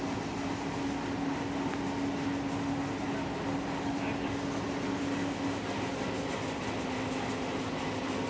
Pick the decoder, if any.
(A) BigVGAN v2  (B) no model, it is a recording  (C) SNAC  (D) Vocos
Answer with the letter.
B